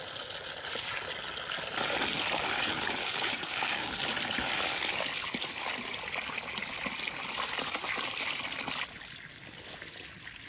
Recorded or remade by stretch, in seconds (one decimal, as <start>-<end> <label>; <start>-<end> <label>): 0.0-3.0 recorded; 3.0-3.9 remade; 3.9-10.5 recorded